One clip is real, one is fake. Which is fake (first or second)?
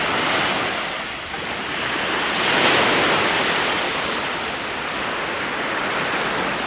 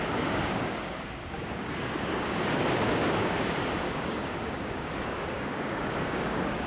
second